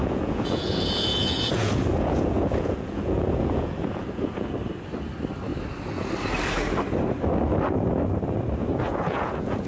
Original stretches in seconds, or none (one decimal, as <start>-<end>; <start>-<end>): 4.5-8.6